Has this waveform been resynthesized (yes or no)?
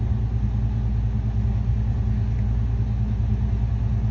no